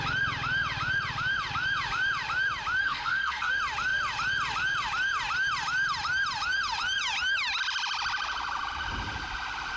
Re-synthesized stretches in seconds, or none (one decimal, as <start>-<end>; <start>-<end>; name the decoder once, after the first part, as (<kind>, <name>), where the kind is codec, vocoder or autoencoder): 2.8-3.5 (codec, SNAC)